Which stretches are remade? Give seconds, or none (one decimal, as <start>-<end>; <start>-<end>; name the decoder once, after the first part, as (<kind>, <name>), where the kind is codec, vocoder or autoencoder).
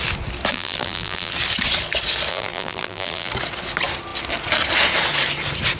0.5-1.3 (vocoder, BigVGAN v2); 2.3-3.3